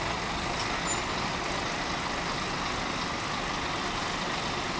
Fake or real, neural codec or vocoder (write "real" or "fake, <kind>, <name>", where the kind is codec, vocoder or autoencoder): real